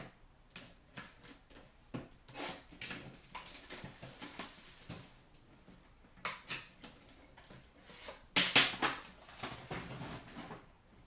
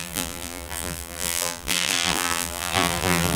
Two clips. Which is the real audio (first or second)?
first